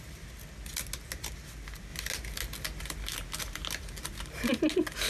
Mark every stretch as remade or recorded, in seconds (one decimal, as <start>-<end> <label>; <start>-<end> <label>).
0.0-5.1 recorded

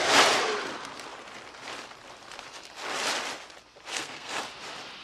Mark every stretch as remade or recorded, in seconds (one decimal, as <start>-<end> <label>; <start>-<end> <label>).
0.0-3.9 recorded; 3.9-4.4 remade; 4.4-5.0 recorded

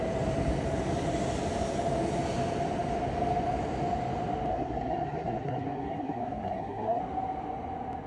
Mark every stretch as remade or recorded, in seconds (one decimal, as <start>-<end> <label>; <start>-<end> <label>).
0.0-4.5 recorded; 4.5-7.0 remade; 7.0-8.1 recorded

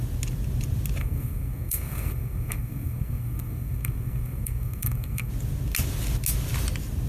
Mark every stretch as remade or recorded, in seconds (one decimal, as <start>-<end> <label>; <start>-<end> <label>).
0.0-1.0 recorded; 1.0-5.3 remade; 5.3-7.1 recorded